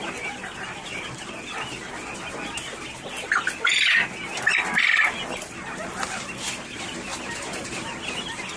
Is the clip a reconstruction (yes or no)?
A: no